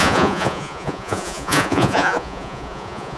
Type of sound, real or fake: fake